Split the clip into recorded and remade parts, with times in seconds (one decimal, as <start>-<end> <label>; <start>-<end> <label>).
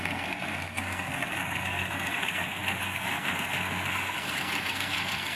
0.0-5.4 remade